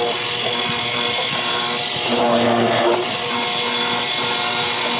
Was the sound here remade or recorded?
recorded